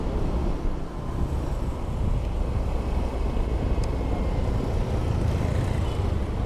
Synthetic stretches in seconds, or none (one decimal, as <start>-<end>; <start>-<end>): none